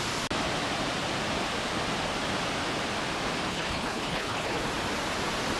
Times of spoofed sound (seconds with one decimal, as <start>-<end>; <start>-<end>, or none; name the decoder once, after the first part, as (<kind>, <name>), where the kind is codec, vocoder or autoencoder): 3.5-4.6 (codec, HILCodec)